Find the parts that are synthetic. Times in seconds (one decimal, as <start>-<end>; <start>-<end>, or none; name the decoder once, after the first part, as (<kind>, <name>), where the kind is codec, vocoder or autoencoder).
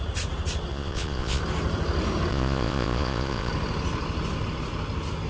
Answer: 0.7-1.4 (vocoder, Vocos); 2.3-3.5